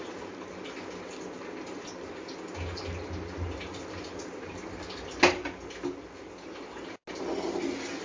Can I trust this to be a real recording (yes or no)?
yes